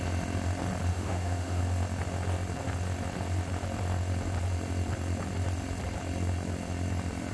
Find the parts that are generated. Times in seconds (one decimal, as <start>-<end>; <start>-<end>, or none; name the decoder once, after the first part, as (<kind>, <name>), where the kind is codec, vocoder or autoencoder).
0.9-1.6 (autoencoder, DAC-VAE)